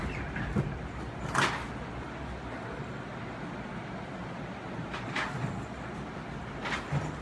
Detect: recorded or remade recorded